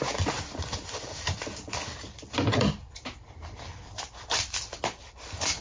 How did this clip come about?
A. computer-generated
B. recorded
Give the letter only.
B